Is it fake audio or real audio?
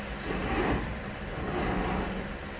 real